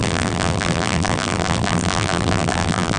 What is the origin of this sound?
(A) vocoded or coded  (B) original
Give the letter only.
A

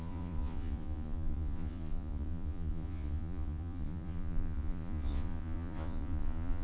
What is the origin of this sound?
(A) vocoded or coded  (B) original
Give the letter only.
A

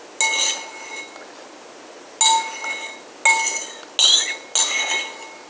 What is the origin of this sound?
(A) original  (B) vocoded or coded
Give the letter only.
A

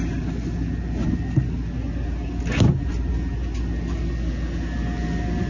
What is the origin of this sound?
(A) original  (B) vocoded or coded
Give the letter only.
A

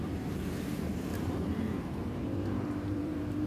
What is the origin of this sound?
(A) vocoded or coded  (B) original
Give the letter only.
A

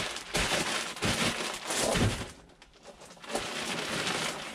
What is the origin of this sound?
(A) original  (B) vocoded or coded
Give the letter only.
A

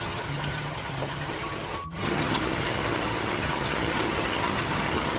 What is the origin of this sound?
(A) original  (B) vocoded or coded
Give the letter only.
B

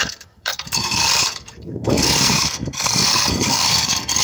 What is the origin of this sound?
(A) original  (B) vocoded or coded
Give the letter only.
B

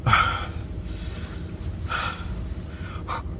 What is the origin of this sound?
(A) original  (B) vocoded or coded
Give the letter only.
A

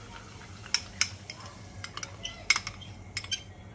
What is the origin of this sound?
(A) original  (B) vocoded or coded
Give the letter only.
A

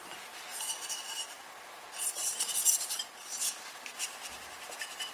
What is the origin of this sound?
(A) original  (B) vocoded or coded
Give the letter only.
A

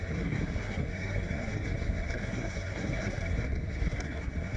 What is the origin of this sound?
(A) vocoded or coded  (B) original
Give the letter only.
A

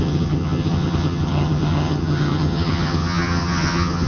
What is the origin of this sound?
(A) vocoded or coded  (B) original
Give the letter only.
A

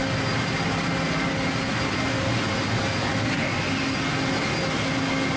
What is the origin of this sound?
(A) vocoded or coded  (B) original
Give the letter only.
B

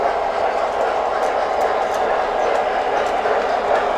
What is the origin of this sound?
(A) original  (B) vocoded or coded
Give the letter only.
A